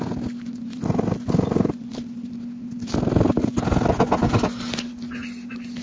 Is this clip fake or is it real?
real